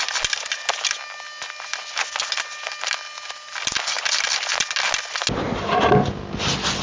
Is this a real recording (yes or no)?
yes